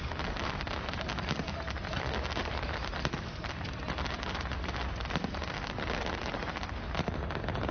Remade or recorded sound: recorded